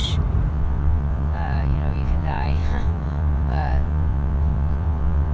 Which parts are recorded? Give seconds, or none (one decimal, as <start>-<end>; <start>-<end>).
0.0-0.5